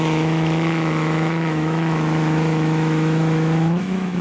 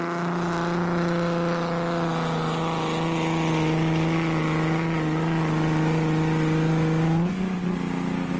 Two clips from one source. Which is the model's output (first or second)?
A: first